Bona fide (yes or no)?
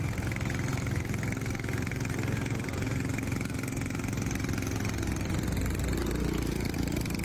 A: yes